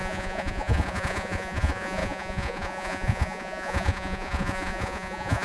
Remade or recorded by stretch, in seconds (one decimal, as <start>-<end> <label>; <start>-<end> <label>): 0.0-5.4 remade